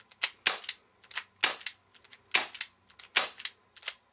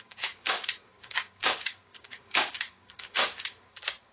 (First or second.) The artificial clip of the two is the second